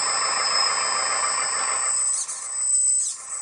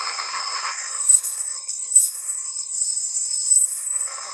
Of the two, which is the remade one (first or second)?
second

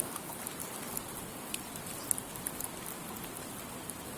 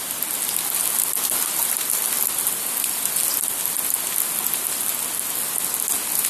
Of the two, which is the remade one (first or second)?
first